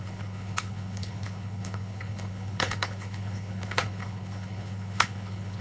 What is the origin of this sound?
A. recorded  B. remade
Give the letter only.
B